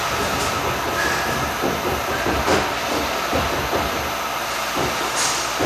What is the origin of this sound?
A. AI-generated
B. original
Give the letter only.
B